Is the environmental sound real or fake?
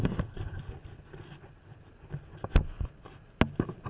real